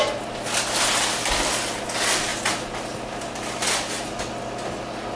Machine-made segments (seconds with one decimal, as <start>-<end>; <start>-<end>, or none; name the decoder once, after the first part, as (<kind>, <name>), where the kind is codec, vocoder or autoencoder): none

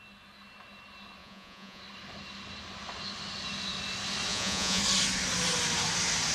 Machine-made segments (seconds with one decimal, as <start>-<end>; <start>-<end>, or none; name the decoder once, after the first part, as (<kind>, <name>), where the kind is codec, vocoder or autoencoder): 1.2-1.8 (vocoder, Vocos); 4.3-4.8

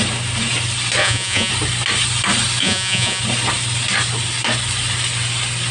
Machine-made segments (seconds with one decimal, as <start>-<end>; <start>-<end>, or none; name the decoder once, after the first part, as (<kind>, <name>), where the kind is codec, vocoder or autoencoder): 1.0-1.5 (vocoder, Vocos); 2.6-3.2

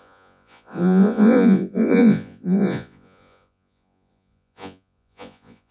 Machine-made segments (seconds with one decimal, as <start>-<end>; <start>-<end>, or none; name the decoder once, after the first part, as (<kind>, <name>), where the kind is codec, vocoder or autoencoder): 0.0-5.7 (vocoder, Vocos)

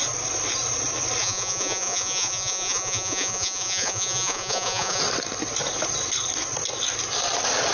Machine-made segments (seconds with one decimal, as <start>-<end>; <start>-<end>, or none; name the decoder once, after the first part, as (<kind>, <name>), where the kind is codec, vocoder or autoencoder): 1.2-5.0 (vocoder, Vocos)